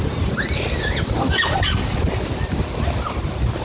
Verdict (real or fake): real